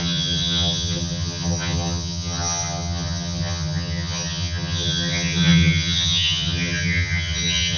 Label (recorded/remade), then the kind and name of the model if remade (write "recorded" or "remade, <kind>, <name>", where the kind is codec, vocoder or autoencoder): remade, vocoder, HiFi-GAN